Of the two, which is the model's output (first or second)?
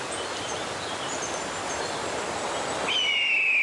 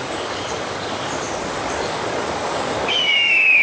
second